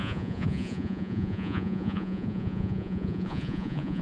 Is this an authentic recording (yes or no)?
no